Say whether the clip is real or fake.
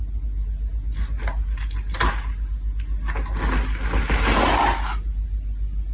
real